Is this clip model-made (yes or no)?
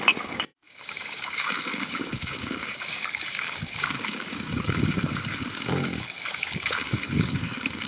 yes